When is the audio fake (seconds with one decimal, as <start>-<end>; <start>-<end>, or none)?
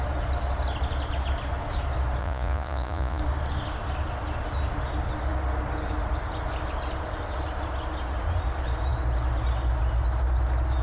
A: 2.2-3.2